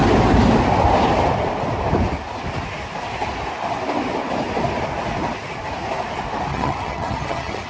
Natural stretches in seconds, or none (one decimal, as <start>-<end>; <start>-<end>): 0.0-6.5